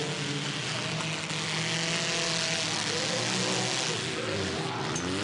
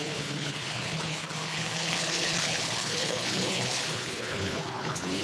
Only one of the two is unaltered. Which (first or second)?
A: first